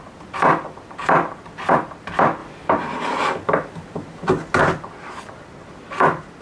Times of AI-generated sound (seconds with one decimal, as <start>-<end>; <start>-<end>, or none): 1.0-1.8